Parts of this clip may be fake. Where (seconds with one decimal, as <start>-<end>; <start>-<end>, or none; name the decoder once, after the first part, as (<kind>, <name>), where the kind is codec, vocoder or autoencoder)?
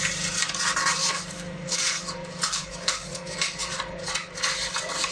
1.0-4.1 (codec, DAC)